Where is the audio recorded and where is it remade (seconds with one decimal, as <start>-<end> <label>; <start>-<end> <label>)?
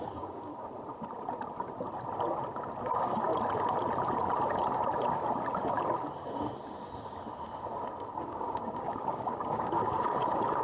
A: 0.0-0.5 remade; 0.5-2.8 recorded; 2.8-3.3 remade; 3.3-8.2 recorded; 8.2-10.6 remade